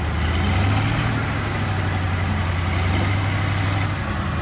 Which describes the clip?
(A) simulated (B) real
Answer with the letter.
B